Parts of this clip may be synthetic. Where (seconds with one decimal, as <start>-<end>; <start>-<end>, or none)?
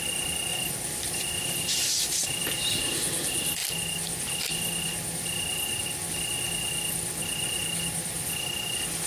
none